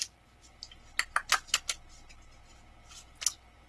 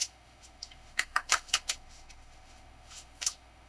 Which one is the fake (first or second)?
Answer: second